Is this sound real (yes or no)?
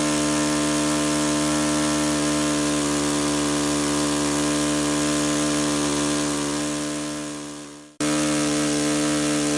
yes